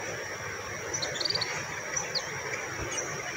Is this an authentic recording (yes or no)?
yes